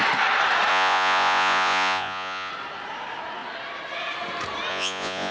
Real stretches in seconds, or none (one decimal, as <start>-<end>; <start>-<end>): 0.0-0.7; 2.5-4.7